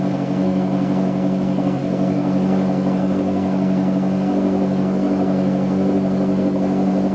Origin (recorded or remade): remade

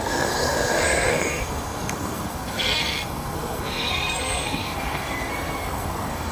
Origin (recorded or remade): remade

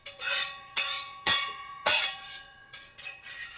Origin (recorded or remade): remade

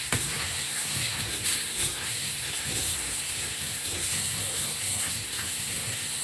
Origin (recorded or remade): remade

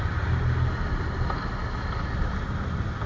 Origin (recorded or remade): recorded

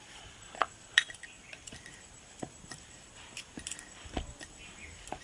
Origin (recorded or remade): remade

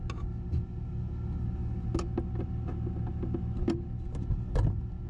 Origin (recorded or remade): recorded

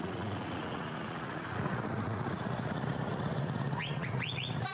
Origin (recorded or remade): remade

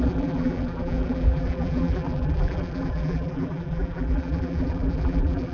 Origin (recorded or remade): remade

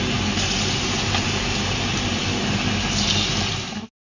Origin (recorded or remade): recorded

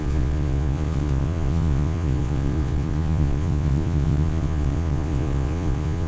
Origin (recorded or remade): remade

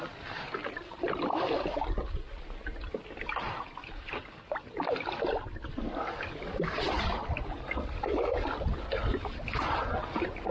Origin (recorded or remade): remade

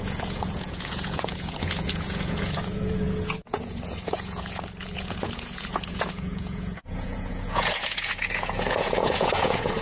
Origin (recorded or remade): remade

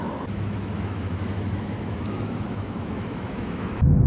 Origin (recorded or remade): remade